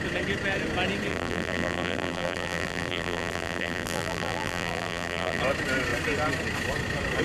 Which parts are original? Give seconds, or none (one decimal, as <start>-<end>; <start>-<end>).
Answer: 0.0-1.1; 5.4-7.2